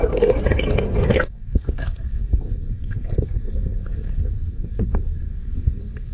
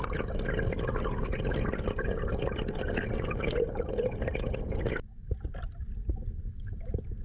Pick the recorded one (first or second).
second